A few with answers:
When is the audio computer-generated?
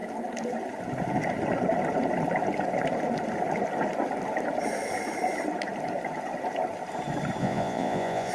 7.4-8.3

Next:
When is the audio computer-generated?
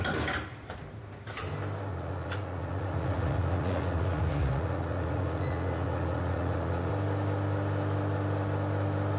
1.9-6.9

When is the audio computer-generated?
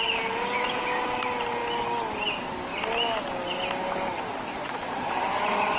4.5-5.8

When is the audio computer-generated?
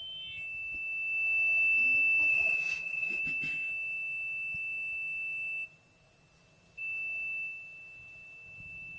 2.3-3.2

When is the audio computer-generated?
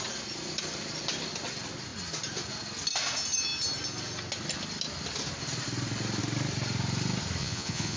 7.4-8.0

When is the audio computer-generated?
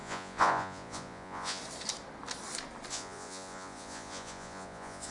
0.0-1.6; 2.9-5.1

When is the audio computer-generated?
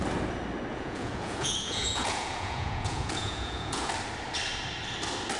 0.7-3.9